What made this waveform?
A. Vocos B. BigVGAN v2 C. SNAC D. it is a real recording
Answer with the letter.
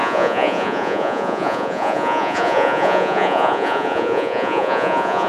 A